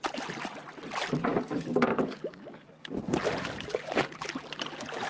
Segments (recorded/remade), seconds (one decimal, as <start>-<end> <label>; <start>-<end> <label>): 0.0-1.3 recorded; 1.3-3.0 remade; 3.0-5.1 recorded

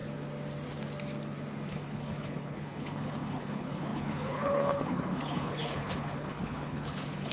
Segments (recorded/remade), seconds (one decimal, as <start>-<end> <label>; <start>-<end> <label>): 0.0-1.7 recorded; 1.7-7.3 remade

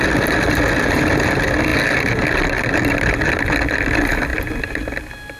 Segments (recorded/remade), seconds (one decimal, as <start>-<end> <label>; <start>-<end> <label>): 0.0-5.4 recorded

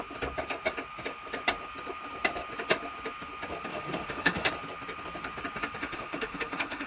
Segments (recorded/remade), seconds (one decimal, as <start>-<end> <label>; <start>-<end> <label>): 0.0-3.7 recorded; 3.7-4.5 remade; 4.5-5.8 recorded; 5.8-6.9 remade

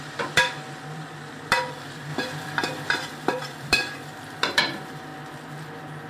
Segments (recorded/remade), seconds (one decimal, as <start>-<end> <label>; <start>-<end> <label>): 0.0-5.1 remade; 5.1-5.6 recorded; 5.6-6.1 remade

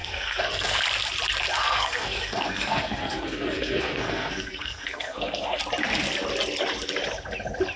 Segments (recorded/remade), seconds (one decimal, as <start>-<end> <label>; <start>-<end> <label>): 0.0-0.8 remade; 0.8-1.6 recorded; 1.6-5.6 remade; 5.6-7.8 recorded